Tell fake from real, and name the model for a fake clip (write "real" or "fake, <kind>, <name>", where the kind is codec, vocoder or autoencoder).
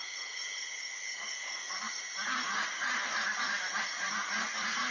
real